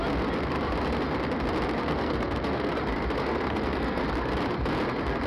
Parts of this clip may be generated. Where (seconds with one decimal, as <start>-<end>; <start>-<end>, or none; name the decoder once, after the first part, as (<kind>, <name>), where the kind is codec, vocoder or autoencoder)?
1.8-2.7 (codec, SNAC); 3.2-4.0